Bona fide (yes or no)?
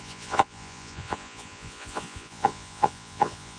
no